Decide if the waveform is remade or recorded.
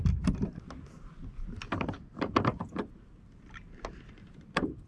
recorded